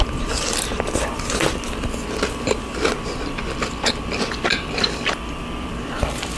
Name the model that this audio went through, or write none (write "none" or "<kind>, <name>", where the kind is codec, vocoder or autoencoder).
vocoder, BigVGAN v2